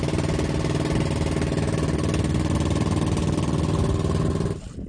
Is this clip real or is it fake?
real